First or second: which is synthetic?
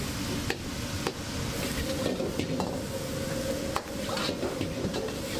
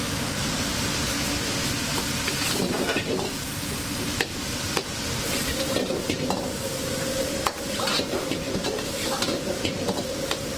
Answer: second